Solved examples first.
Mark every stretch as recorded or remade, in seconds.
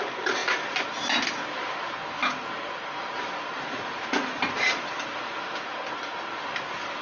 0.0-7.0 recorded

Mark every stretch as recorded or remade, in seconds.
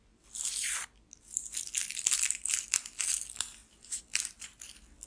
0.0-5.1 recorded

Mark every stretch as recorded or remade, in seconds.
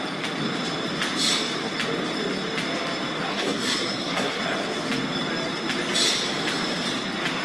0.0-3.3 recorded; 3.3-4.4 remade; 4.4-7.4 recorded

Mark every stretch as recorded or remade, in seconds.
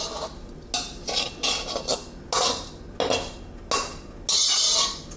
0.0-5.2 recorded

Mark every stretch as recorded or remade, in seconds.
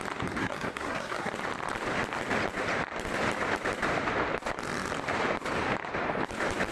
0.0-0.4 recorded; 0.4-1.3 remade; 1.3-6.7 recorded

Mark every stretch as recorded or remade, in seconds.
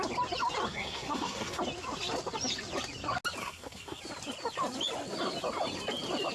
0.0-0.7 recorded; 0.7-1.6 remade; 1.6-3.4 recorded; 3.4-4.0 remade; 4.0-6.3 recorded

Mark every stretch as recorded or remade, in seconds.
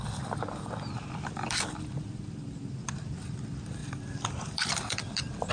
0.0-3.8 recorded; 3.8-5.5 remade